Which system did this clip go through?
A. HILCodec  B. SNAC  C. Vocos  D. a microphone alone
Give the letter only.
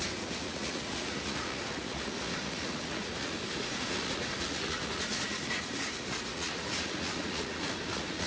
C